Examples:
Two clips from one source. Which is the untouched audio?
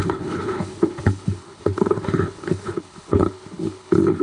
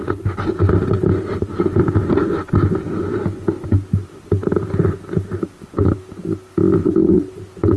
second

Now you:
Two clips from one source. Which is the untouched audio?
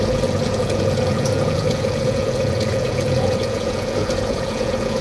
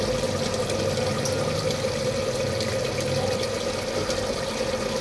second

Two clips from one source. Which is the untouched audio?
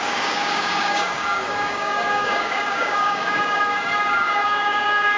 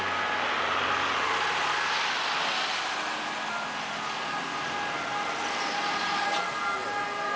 second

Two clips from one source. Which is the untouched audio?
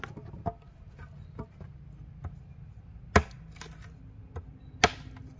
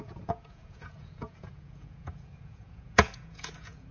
first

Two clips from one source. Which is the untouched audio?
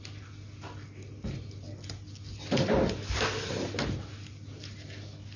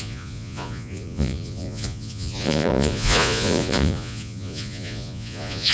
first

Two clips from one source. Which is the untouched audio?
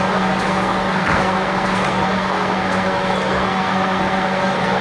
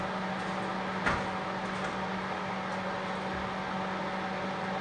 second